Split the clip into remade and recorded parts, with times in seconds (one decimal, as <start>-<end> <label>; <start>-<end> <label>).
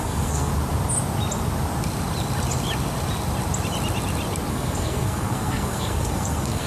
0.0-0.5 remade; 0.5-4.5 recorded; 4.5-6.7 remade